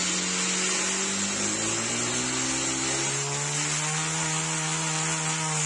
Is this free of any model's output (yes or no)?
yes